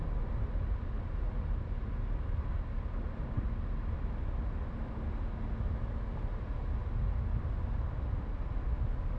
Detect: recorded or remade recorded